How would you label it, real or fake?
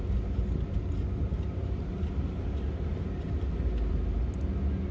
real